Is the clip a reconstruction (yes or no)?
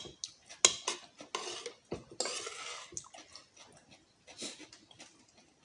no